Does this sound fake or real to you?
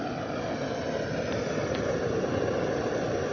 real